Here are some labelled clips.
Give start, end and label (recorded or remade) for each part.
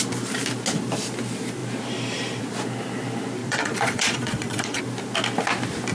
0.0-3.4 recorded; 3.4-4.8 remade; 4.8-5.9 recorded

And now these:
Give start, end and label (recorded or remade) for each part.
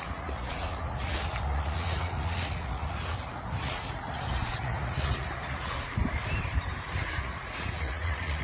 0.0-6.0 remade; 6.0-7.1 recorded; 7.1-8.4 remade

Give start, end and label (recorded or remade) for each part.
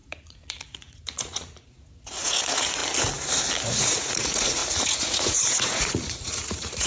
0.0-2.8 remade; 2.8-3.7 recorded; 3.7-6.9 remade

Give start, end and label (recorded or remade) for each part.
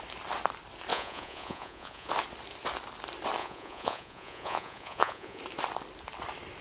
0.0-0.9 recorded; 0.9-2.1 remade; 2.1-3.4 recorded; 3.4-5.4 remade; 5.4-6.6 recorded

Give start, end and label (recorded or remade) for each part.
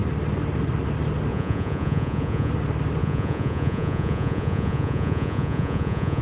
0.0-1.3 recorded; 1.3-2.5 remade; 2.5-3.0 recorded; 3.0-6.2 remade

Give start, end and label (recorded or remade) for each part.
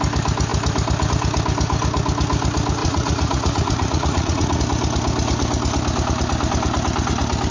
0.0-2.8 recorded; 2.8-4.6 remade; 4.6-7.5 recorded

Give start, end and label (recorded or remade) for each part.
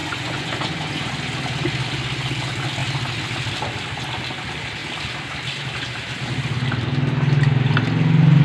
0.0-1.1 remade; 1.1-8.4 recorded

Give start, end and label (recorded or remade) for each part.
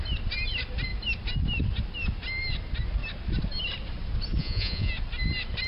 0.0-4.4 recorded; 4.4-4.9 remade; 4.9-5.7 recorded